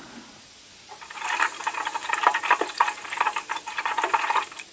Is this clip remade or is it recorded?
recorded